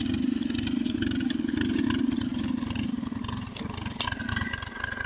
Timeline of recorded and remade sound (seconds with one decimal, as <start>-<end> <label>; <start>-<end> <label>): 0.0-5.1 recorded